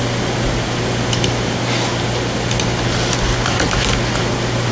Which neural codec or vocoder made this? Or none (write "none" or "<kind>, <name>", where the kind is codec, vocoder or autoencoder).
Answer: none